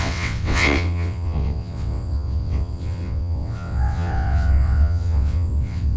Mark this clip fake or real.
fake